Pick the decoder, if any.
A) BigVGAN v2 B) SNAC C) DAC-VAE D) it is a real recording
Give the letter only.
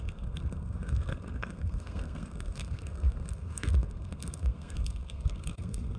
B